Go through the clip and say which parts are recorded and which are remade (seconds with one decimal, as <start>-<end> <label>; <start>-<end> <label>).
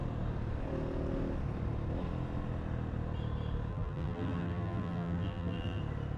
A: 0.0-3.7 recorded; 3.7-5.8 remade; 5.8-6.2 recorded